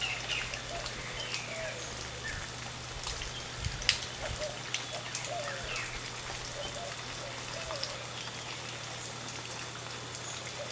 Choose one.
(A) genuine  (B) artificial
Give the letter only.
A